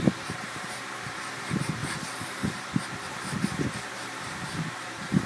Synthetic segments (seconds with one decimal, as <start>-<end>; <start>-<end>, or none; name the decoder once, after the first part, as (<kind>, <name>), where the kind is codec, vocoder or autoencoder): 0.0-1.8 (vocoder, BigVGAN v2); 2.3-5.3